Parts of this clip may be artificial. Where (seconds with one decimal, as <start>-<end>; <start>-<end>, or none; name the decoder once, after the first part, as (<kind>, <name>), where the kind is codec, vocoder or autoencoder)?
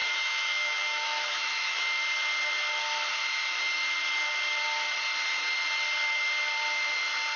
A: 0.0-2.0 (autoencoder, DAC-VAE)